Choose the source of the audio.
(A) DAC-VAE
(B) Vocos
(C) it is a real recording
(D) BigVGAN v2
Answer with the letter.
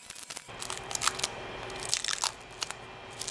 C